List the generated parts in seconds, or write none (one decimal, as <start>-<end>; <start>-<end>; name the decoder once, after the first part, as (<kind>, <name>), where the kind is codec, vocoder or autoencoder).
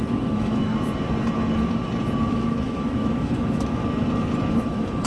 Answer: 0.0-0.7 (autoencoder, DAC-VAE); 2.3-3.8; 4.5-5.1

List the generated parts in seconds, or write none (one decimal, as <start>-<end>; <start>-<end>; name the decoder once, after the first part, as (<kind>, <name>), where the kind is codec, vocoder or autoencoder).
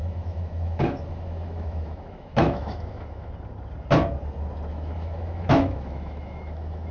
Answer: 0.0-3.3 (autoencoder, DAC-VAE); 4.7-6.9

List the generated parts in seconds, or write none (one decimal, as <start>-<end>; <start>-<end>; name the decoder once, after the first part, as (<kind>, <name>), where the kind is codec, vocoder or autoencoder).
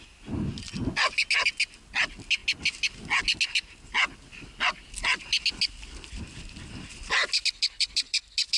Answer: none